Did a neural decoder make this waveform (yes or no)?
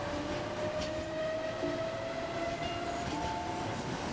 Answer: no